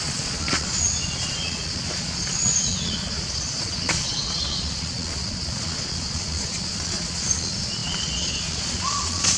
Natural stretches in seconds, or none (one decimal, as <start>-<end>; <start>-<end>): none